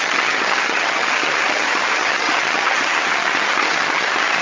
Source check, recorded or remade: remade